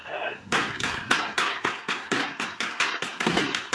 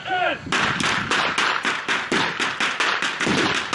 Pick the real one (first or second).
second